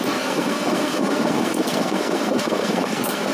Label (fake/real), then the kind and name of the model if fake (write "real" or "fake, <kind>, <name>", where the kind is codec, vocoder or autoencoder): fake, codec, SNAC